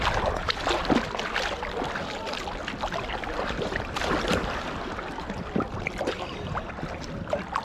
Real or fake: real